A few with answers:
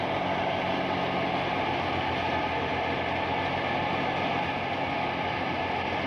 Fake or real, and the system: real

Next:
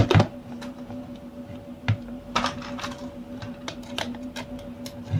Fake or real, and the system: real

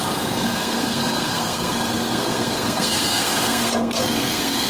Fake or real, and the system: fake, codec, SNAC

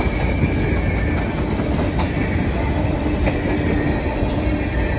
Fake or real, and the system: real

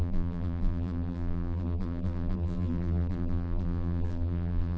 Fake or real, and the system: fake, vocoder, BigVGAN v2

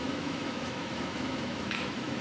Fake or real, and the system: fake, autoencoder, DAC-VAE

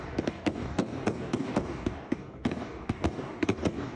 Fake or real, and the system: fake, codec, DAC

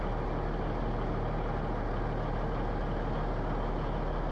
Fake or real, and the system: real